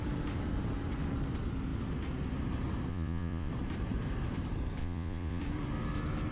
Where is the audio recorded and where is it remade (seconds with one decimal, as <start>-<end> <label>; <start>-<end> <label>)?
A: 0.0-2.9 recorded; 2.9-3.5 remade; 3.5-4.8 recorded; 4.8-5.4 remade; 5.4-6.3 recorded